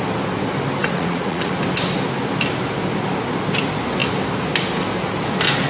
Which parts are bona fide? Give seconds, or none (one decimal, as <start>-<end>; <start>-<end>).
0.0-0.8; 1.5-5.7